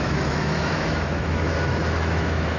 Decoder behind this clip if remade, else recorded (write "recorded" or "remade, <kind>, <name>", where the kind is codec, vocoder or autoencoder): remade, autoencoder, DAC-VAE